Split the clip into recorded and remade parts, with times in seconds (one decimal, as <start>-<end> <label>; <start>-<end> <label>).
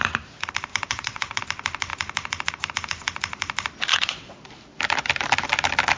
0.0-0.7 recorded; 0.7-1.4 remade; 1.4-3.9 recorded; 3.9-4.4 remade; 4.4-6.0 recorded